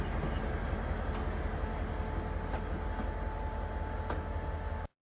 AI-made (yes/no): no